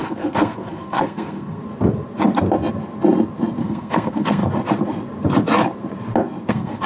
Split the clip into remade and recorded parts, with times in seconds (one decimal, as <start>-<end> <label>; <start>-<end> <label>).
0.0-1.6 remade; 1.6-3.6 recorded; 3.6-4.4 remade; 4.4-6.5 recorded; 6.5-6.9 remade